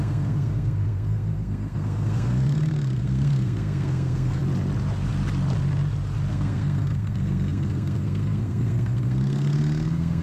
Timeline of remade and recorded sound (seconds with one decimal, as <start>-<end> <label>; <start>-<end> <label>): 0.0-4.4 remade; 4.4-6.3 recorded; 6.3-10.2 remade